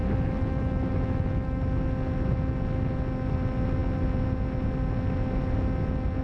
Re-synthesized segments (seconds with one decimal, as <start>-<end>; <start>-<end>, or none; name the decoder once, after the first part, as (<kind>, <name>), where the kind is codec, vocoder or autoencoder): 0.0-1.6 (autoencoder, DAC-VAE)